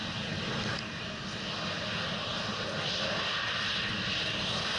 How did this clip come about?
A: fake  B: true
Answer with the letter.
B